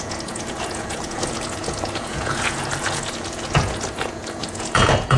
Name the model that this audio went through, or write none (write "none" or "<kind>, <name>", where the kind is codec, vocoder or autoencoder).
vocoder, Vocos